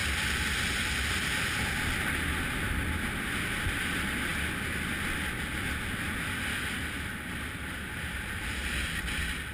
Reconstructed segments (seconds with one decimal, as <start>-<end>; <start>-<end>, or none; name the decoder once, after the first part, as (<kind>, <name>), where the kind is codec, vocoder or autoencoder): none